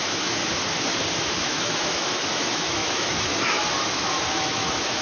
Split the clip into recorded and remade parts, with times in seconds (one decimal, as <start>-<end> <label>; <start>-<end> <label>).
0.0-0.4 remade; 0.4-1.2 recorded; 1.2-5.0 remade